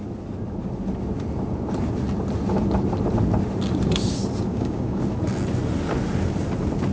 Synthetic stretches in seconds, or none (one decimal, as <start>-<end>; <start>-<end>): 4.5-5.0